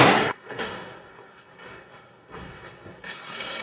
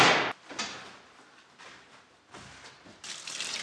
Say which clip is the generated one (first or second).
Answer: first